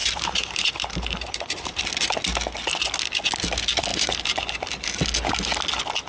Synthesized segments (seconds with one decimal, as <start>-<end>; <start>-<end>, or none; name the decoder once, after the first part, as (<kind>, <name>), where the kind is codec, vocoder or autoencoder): 0.0-1.8 (vocoder, BigVGAN v2); 3.9-4.5